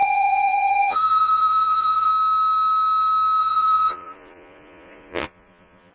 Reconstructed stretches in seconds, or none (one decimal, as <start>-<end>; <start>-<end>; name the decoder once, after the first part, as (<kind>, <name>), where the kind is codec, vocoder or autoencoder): 0.0-2.1 (vocoder, Vocos); 3.4-5.9